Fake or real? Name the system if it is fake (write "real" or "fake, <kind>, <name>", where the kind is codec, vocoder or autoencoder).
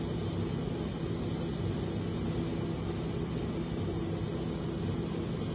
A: real